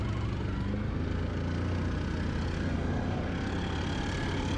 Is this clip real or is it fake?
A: real